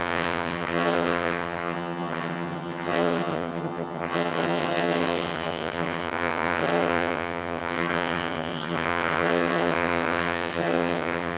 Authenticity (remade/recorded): remade